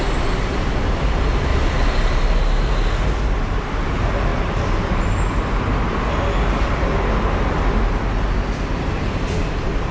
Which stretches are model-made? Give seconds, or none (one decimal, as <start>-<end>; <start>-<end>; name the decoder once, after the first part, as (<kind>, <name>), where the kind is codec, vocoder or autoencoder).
1.5-2.2 (vocoder, BigVGAN v2)